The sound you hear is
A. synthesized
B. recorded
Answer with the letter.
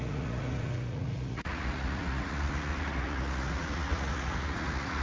A